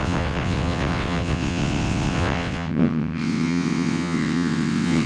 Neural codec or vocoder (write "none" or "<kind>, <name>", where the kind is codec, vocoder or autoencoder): vocoder, WaveNeXt